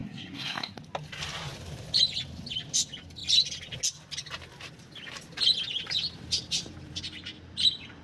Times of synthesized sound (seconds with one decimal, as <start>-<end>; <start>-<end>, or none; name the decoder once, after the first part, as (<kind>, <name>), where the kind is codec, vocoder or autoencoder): 0.0-0.8 (codec, SNAC)